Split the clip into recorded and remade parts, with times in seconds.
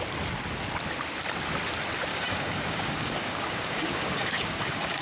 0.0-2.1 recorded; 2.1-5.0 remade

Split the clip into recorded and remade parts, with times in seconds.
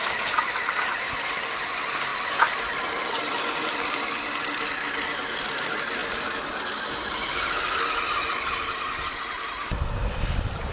0.0-10.7 recorded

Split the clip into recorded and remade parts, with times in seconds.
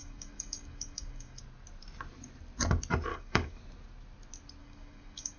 0.0-1.4 remade; 1.4-3.1 recorded; 3.1-3.6 remade; 3.6-4.6 recorded; 4.6-5.4 remade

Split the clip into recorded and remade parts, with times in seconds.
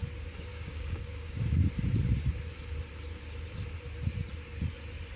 0.0-0.5 recorded; 0.5-1.6 remade; 1.6-5.2 recorded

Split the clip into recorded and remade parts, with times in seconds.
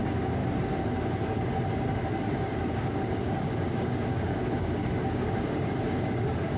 0.0-0.4 remade; 0.4-2.3 recorded; 2.3-6.6 remade